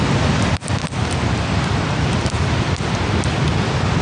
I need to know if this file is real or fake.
fake